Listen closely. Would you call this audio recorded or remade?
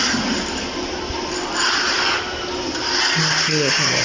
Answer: recorded